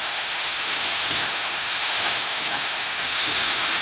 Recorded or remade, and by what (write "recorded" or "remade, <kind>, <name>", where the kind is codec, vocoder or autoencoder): remade, autoencoder, DAC-VAE